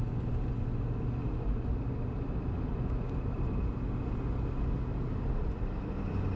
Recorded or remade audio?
recorded